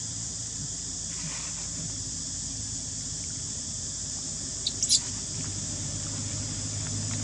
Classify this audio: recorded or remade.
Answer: recorded